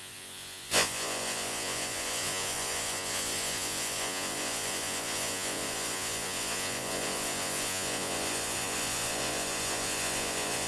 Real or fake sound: fake